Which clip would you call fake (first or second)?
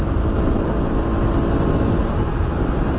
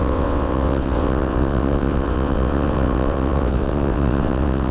second